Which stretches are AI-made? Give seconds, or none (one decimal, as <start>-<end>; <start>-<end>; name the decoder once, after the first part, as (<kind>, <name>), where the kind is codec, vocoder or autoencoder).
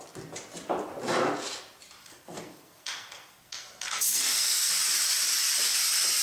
2.0-4.7 (codec, SNAC)